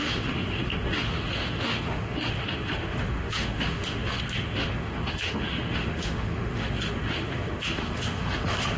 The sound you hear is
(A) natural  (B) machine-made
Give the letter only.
B